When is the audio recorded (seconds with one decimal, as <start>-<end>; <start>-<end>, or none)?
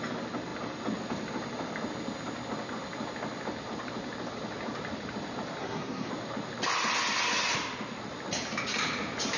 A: 0.0-5.6; 6.1-9.4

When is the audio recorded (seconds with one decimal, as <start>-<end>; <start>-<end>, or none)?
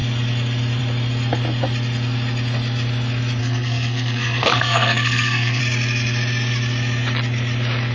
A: 0.0-3.4; 5.6-7.9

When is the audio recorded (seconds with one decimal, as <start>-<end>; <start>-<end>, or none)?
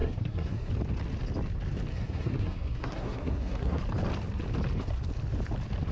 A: 0.7-1.9; 3.8-5.9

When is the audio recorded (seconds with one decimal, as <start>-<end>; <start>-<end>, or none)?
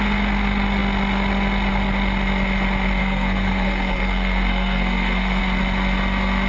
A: 0.0-3.0; 5.4-6.5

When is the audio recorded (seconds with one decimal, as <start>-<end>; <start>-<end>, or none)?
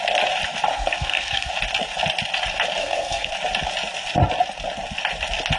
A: 0.0-0.7; 1.5-2.8; 3.3-5.6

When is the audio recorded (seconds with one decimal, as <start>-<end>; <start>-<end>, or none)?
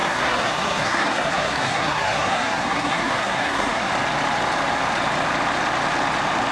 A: 3.9-6.5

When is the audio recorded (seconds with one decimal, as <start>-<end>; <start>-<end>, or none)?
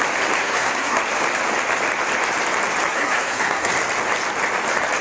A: 0.0-0.4; 1.0-2.9; 3.7-5.0